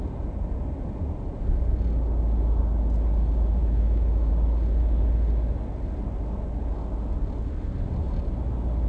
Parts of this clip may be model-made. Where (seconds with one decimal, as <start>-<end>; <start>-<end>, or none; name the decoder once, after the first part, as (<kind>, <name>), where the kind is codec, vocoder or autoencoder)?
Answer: 3.6-4.3 (autoencoder, DAC-VAE)